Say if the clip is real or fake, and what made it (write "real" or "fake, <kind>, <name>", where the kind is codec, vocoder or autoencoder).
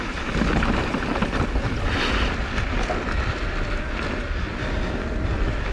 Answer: real